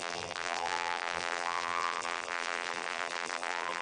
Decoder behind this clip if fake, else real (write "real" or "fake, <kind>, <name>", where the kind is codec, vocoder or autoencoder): fake, vocoder, BigVGAN v2